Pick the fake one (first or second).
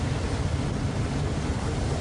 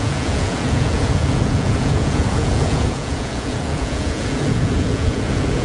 second